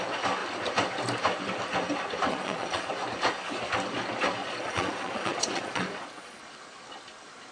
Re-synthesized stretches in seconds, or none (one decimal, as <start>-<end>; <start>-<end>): 2.3-2.9; 4.4-6.4